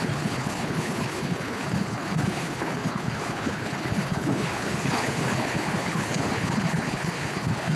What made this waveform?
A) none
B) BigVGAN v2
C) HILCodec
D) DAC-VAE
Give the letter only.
C